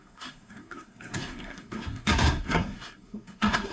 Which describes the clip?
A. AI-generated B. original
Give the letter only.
A